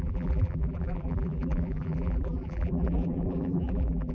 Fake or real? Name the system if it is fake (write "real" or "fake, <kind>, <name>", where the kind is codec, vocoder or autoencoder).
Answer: fake, vocoder, BigVGAN v2